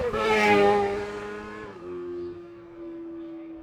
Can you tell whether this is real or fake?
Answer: fake